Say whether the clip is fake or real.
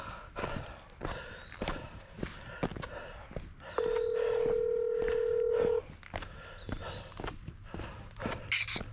real